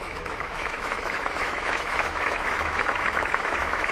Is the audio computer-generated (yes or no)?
yes